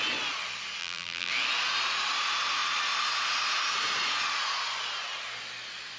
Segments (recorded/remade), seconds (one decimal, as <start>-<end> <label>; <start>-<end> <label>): 0.0-0.8 recorded; 0.8-1.3 remade; 1.3-6.0 recorded